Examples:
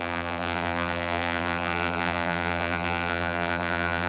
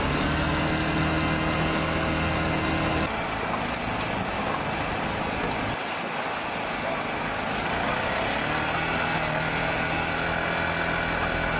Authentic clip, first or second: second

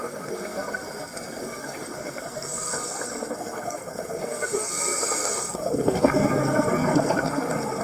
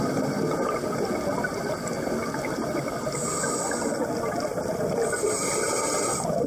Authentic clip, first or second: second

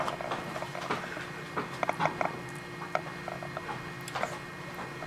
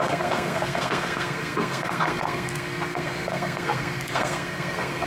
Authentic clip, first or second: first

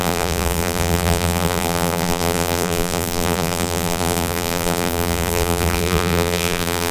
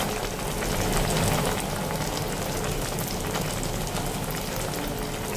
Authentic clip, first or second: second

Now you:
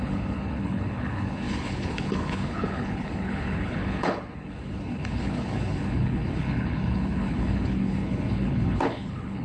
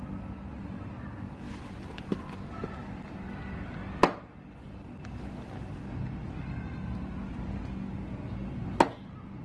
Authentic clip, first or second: second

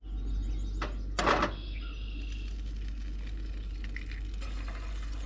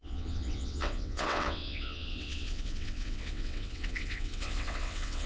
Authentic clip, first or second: first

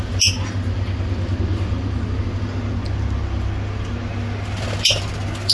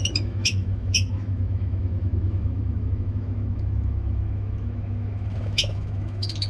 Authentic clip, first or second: first